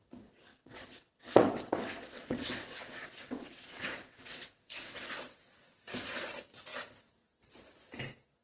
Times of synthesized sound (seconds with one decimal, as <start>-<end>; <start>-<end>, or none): 0.5-5.5